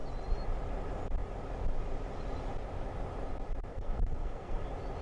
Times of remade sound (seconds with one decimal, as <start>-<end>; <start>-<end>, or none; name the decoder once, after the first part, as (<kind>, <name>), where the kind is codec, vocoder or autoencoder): 3.7-4.6 (codec, SNAC)